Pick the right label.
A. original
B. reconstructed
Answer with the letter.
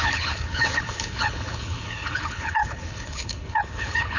B